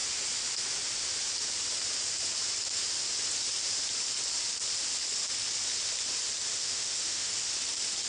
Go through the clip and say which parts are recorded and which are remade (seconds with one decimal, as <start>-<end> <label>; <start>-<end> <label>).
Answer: 0.0-6.5 recorded; 6.5-7.3 remade; 7.3-8.1 recorded